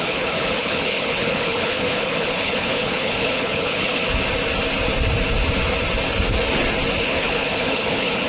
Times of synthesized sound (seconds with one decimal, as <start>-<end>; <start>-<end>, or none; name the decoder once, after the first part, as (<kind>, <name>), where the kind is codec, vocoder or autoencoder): 0.0-4.0 (codec, HILCodec); 7.0-8.3